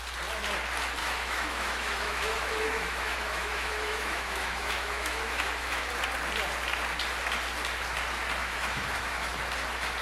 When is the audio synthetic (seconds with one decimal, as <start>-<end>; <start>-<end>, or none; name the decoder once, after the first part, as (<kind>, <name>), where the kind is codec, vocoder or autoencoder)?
1.0-5.9 (autoencoder, DAC-VAE); 8.4-9.3